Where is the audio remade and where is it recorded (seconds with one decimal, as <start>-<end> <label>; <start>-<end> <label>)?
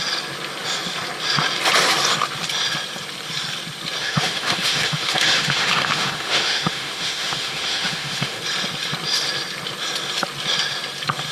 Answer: 0.0-4.0 recorded; 4.0-8.4 remade; 8.4-11.3 recorded